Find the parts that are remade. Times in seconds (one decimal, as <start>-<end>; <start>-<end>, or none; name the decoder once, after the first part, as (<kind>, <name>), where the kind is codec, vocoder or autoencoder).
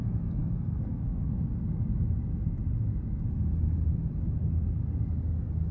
0.4-1.3 (codec, SNAC)